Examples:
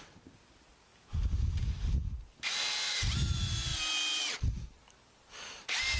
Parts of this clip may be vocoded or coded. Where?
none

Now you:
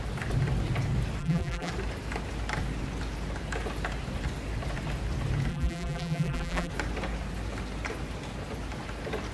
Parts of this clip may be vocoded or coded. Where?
1.2-1.7 (vocoder, BigVGAN v2); 5.5-6.7